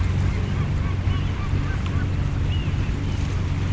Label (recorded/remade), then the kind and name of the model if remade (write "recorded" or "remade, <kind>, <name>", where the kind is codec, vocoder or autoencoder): recorded